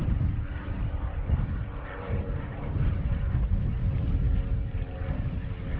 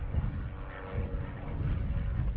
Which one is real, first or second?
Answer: second